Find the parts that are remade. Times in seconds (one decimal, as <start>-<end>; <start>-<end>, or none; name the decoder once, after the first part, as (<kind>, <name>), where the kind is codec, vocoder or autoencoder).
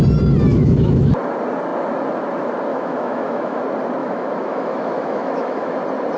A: 0.5-1.1 (autoencoder, DAC-VAE); 2.7-3.6; 4.0-5.8